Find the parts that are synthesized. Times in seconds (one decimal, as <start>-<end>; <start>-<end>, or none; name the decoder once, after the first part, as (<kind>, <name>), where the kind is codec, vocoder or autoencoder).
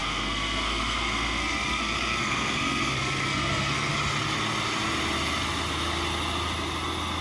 0.0-3.9 (codec, SNAC)